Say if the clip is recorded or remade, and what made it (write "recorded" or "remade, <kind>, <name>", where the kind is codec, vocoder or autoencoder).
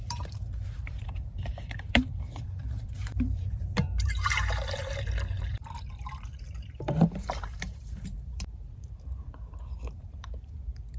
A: remade, vocoder, BigVGAN v2